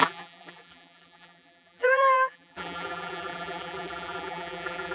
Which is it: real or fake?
fake